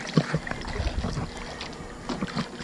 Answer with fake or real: real